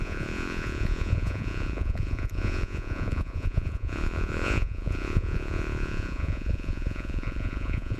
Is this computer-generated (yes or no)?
yes